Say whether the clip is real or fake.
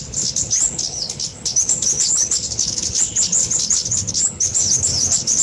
fake